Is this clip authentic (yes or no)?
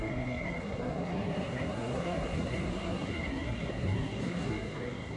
no